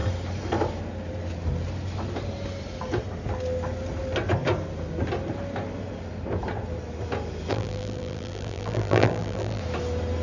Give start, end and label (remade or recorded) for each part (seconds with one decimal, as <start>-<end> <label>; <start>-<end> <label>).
0.0-7.5 recorded; 7.5-9.6 remade; 9.6-10.2 recorded